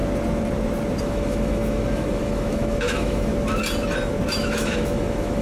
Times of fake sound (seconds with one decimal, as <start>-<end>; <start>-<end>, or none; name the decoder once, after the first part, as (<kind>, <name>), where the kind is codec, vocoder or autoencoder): 1.0-3.3 (autoencoder, DAC-VAE); 4.3-5.4